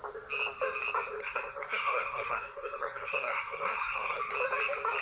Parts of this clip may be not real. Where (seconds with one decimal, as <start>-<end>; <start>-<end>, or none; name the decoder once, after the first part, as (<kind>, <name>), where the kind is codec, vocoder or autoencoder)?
1.2-4.2 (codec, SNAC)